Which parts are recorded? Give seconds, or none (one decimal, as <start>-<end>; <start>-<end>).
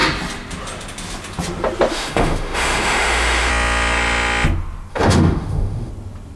0.0-1.9; 3.5-4.9; 5.9-6.4